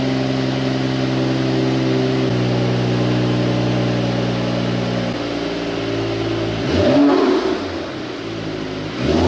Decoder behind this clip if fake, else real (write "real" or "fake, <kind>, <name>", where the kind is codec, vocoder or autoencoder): real